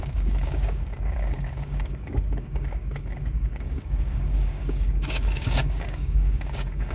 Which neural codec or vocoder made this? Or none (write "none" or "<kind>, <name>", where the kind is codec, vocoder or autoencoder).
codec, DAC